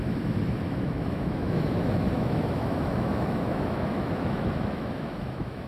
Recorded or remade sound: remade